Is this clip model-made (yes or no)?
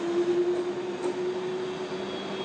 no